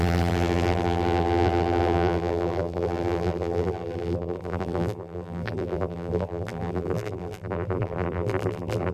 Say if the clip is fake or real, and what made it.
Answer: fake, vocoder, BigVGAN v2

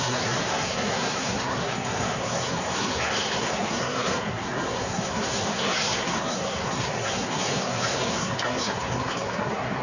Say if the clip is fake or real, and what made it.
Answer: fake, codec, SNAC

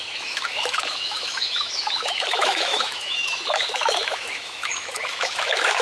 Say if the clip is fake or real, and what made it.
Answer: fake, autoencoder, DAC-VAE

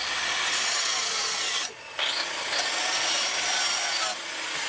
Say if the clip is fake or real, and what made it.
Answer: real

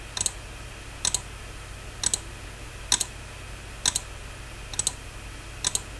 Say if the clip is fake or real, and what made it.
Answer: real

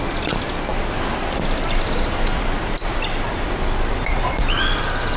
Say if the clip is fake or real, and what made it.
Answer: real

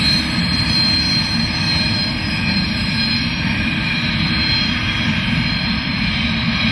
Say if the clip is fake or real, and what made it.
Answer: real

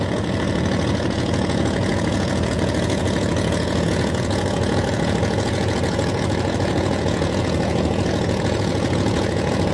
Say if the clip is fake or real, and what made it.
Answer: fake, vocoder, Vocos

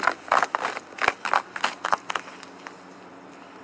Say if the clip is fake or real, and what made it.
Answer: real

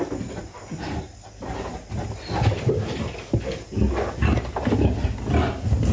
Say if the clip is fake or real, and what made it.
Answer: real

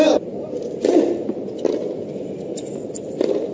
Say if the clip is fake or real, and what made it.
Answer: real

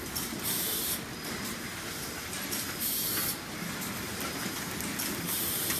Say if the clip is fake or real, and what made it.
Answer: real